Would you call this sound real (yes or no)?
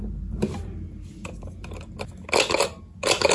yes